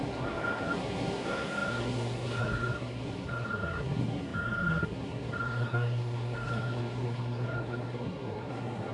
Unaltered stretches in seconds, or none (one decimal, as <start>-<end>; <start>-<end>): none